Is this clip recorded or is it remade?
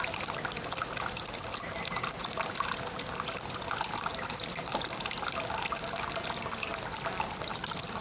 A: recorded